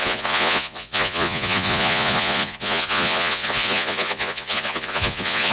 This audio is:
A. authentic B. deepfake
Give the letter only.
B